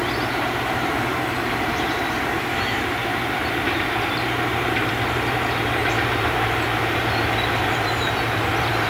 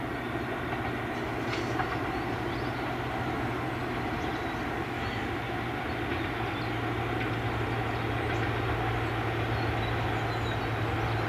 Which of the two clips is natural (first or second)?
second